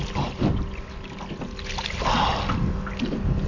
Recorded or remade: recorded